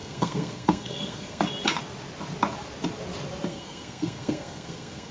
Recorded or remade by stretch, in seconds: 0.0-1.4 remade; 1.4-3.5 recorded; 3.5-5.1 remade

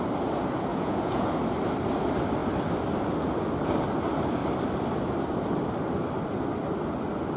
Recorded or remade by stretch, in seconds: 0.0-0.7 recorded; 0.7-1.3 remade; 1.3-7.4 recorded